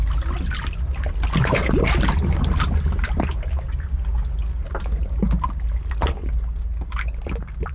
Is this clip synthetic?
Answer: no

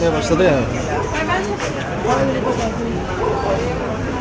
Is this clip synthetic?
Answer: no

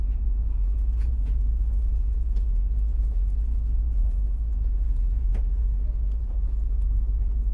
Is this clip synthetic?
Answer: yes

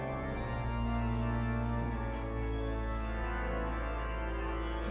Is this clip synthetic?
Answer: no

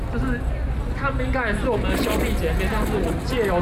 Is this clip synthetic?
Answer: no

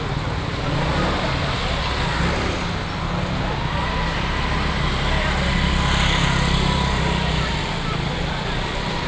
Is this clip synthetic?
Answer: no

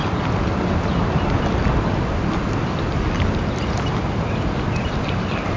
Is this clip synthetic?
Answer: no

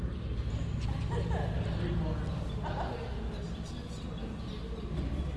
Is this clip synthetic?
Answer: no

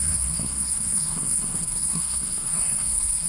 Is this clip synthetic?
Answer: yes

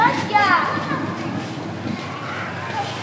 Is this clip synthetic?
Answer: no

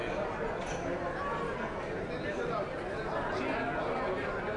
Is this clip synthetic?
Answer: no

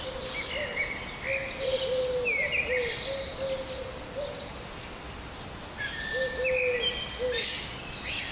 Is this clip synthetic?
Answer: no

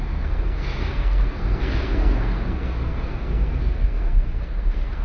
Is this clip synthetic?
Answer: yes